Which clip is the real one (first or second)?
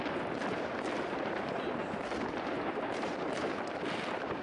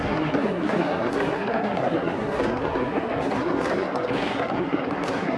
first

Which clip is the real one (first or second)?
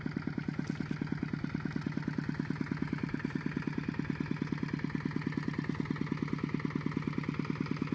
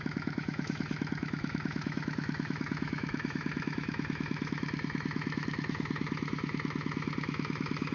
first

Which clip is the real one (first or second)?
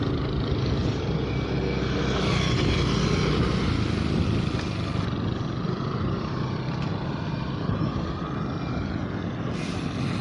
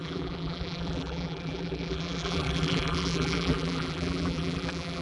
first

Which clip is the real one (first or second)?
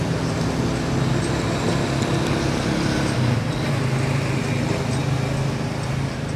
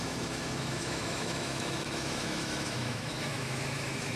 first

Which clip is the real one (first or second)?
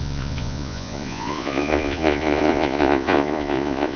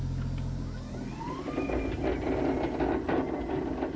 second